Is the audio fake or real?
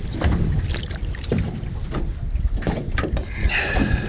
real